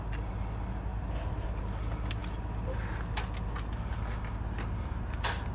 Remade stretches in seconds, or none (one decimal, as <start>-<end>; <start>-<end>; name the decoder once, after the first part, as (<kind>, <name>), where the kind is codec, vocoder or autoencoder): none